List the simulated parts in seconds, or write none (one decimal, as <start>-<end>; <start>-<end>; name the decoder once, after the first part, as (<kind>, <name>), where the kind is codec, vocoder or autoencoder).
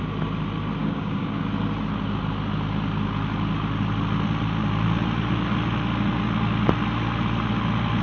0.8-1.4 (codec, DAC)